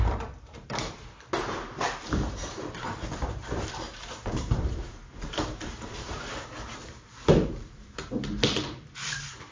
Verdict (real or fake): fake